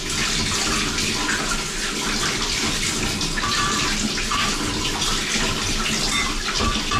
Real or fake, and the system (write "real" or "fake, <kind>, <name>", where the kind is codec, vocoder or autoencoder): real